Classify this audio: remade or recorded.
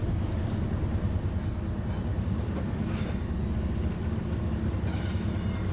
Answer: recorded